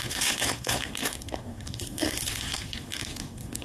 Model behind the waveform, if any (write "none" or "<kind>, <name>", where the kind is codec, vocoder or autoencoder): codec, SNAC